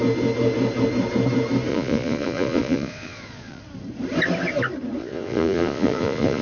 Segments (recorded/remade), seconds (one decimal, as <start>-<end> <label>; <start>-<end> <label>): 0.0-1.7 recorded; 1.7-3.6 remade; 3.6-5.0 recorded; 5.0-6.4 remade